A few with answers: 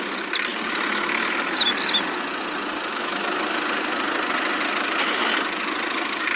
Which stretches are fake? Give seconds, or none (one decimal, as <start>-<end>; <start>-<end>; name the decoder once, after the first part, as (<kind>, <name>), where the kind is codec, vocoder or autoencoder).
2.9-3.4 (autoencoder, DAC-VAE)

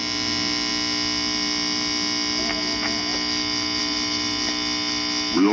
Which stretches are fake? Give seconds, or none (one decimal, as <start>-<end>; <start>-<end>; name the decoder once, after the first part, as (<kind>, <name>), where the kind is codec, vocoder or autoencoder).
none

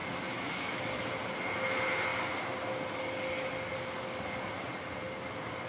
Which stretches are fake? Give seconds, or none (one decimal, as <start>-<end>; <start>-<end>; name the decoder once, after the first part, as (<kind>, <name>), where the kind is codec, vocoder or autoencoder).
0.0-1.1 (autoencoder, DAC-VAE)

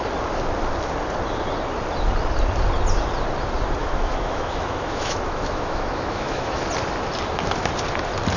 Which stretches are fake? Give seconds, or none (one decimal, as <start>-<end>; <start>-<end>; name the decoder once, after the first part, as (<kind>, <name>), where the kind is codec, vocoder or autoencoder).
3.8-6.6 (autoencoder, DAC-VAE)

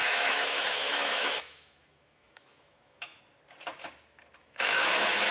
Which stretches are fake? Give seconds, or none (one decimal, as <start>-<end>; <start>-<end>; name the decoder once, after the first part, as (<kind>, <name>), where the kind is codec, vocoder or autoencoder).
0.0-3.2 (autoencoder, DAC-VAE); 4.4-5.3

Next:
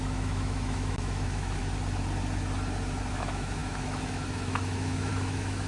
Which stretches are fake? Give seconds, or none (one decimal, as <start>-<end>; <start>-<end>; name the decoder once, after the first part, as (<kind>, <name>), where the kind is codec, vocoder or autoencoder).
0.0-1.6 (autoencoder, DAC-VAE); 3.1-5.7

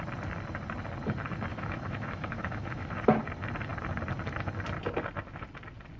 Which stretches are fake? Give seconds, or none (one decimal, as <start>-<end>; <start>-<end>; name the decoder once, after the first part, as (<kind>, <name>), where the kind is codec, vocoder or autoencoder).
1.5-2.9 (autoencoder, DAC-VAE)